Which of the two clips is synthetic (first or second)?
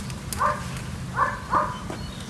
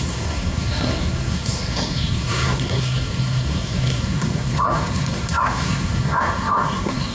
second